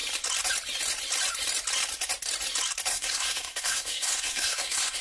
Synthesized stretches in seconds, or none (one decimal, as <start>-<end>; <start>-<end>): 2.9-5.0

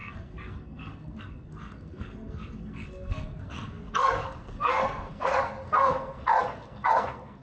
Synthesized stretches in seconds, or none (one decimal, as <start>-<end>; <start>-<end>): 0.0-7.4

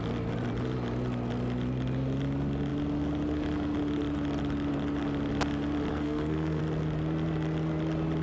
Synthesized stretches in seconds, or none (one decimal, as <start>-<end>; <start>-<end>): 5.9-6.6